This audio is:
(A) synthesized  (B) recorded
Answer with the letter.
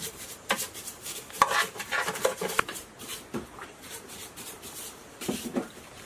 A